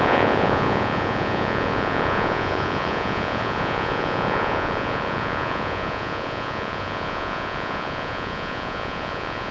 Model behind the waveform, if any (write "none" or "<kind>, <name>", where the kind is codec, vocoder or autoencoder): vocoder, Vocos